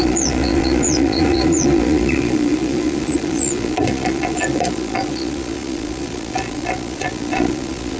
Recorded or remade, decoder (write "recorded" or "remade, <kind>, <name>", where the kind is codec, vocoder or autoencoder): remade, vocoder, Vocos